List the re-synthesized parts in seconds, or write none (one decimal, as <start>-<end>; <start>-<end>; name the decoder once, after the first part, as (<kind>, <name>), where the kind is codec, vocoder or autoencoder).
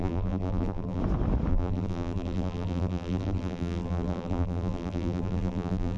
0.0-1.0 (vocoder, BigVGAN v2); 1.5-6.0